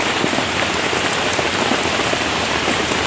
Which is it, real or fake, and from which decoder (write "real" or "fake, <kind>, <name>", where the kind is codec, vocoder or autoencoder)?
real